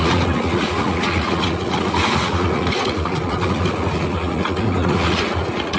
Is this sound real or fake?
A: fake